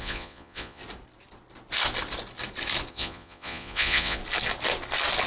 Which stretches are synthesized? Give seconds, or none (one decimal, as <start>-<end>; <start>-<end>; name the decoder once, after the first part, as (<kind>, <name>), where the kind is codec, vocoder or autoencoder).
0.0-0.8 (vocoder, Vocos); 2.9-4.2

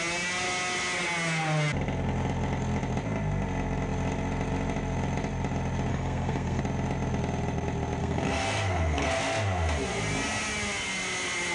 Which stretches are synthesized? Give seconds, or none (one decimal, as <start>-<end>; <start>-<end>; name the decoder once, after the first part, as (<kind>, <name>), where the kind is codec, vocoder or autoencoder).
5.9-6.6 (codec, SNAC); 8.0-9.2

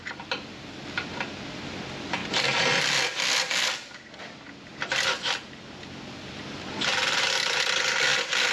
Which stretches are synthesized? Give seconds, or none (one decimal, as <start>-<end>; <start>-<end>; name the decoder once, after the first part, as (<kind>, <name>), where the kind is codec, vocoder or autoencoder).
none

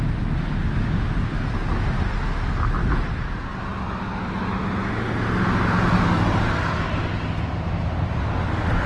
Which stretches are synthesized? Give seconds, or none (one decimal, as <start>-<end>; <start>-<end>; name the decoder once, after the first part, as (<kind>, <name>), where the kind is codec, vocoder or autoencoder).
none

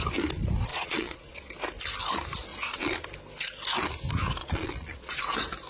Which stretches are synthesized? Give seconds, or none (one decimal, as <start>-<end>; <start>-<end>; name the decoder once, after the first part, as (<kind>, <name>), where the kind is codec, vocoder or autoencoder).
0.7-1.5 (vocoder, Vocos); 2.5-3.0; 4.4-5.2

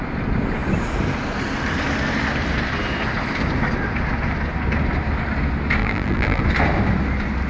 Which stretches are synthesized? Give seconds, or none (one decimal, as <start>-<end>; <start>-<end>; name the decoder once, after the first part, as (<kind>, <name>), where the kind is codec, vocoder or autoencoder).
5.8-6.4 (vocoder, BigVGAN v2)

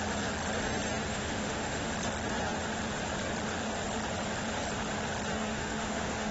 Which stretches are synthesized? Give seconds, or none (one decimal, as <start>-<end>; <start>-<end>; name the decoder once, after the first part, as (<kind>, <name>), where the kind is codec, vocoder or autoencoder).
0.9-1.9 (autoencoder, DAC-VAE); 5.3-6.3